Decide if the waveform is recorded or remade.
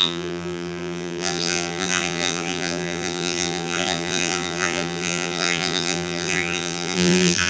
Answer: remade